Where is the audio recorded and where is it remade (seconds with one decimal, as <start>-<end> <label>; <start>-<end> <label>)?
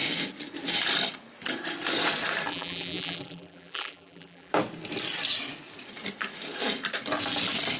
0.0-2.5 recorded; 2.5-4.5 remade; 4.5-7.8 recorded